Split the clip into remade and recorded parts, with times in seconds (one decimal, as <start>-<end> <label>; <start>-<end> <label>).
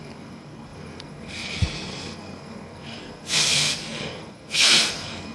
0.0-5.3 remade